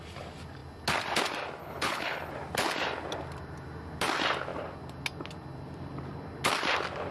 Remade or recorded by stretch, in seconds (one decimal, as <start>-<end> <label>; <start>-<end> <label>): 0.0-1.6 recorded; 1.6-2.3 remade; 2.3-7.1 recorded